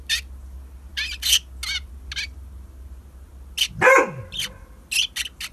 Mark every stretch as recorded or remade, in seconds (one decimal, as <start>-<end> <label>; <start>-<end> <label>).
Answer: 0.0-5.5 recorded